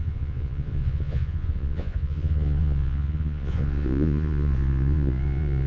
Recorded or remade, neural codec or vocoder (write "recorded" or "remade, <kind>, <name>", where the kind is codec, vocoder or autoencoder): remade, vocoder, Vocos